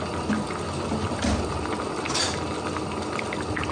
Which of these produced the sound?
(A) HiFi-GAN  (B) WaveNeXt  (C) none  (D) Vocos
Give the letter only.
C